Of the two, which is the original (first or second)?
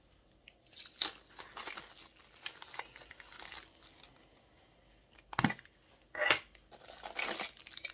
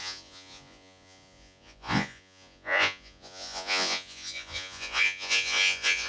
first